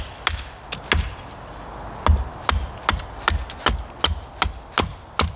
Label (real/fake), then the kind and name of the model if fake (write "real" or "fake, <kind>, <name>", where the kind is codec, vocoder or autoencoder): real